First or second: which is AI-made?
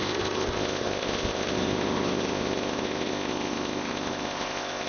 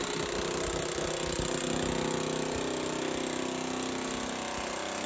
first